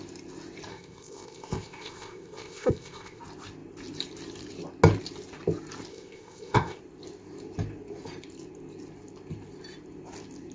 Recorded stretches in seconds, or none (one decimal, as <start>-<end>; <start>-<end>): 0.0-0.7; 3.2-5.9; 6.8-10.5

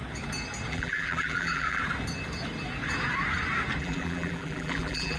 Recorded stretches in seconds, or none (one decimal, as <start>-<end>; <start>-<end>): 0.0-0.7; 1.8-3.8

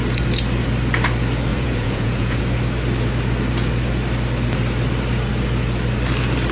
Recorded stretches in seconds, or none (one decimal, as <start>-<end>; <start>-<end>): 0.0-1.5; 2.4-6.5

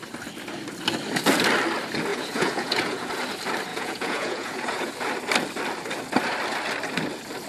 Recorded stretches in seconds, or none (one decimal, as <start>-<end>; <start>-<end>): 0.0-2.1; 3.1-3.7; 4.9-7.5